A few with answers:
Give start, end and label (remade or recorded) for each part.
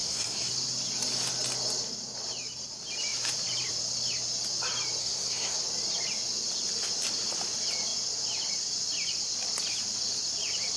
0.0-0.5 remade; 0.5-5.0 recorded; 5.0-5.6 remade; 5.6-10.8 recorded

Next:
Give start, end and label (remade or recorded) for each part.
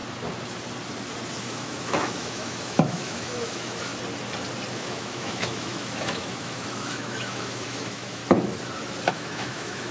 0.0-1.4 recorded; 1.4-3.9 remade; 3.9-4.7 recorded; 4.7-8.2 remade; 8.2-9.1 recorded; 9.1-9.9 remade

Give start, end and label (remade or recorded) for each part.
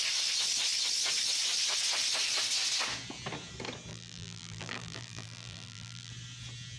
0.0-3.9 recorded; 3.9-6.1 remade; 6.1-6.8 recorded